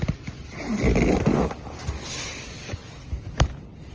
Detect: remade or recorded recorded